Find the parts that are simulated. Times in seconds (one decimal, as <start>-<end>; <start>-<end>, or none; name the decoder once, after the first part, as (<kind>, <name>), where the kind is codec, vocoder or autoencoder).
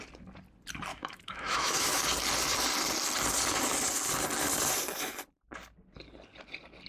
0.9-2.0 (autoencoder, DAC-VAE)